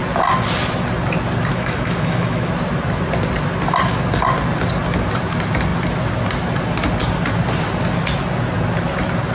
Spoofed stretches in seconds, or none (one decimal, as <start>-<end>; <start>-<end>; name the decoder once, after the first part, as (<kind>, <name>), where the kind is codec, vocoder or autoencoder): 1.5-2.5 (autoencoder, DAC-VAE)